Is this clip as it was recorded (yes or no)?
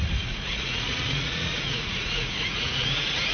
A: no